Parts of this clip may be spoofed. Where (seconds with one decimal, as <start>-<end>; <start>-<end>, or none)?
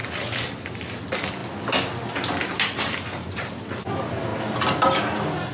0.0-0.6